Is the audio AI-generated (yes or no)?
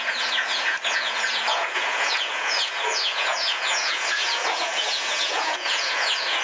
yes